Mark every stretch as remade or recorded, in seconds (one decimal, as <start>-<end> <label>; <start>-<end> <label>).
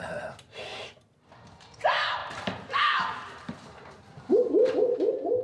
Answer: 0.0-5.4 remade